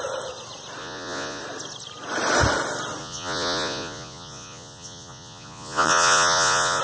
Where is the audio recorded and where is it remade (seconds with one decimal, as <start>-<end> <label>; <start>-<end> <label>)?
0.0-0.8 recorded; 0.8-1.4 remade; 1.4-3.0 recorded; 3.0-6.8 remade